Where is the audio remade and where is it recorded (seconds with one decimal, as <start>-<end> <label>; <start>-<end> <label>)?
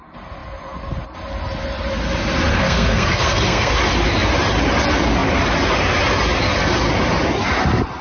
0.0-2.5 recorded; 2.5-3.7 remade; 3.7-8.0 recorded